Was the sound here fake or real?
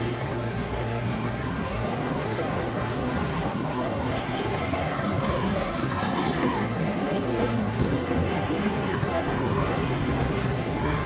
fake